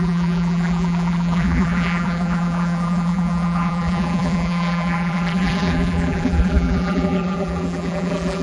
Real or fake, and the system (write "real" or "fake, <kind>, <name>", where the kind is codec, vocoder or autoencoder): fake, vocoder, BigVGAN v2